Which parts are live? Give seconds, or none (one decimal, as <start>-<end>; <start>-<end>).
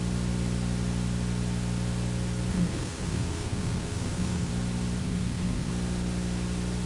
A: 0.0-2.5; 4.5-5.0; 5.7-6.9